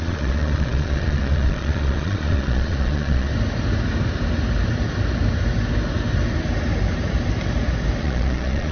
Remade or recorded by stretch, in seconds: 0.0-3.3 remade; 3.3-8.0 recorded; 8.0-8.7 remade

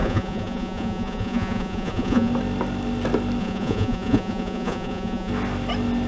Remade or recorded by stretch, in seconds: 0.0-2.3 remade; 2.3-3.4 recorded; 3.4-5.3 remade; 5.3-6.1 recorded

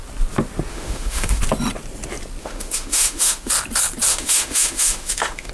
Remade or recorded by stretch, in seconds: 0.0-0.7 recorded; 0.7-1.4 remade; 1.4-2.4 recorded; 2.4-3.5 remade; 3.5-4.1 recorded; 4.1-5.5 remade